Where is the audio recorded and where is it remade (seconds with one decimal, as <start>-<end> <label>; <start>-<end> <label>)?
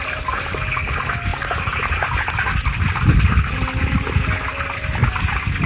0.0-5.7 recorded